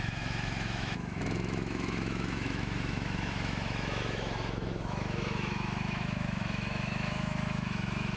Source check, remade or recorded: remade